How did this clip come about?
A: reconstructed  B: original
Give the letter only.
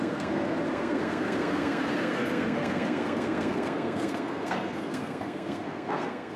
A